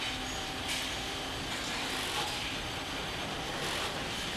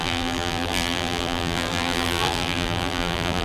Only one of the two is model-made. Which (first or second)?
second